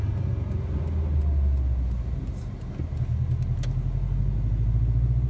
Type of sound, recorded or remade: recorded